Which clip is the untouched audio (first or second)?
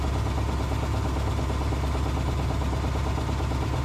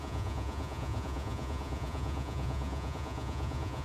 first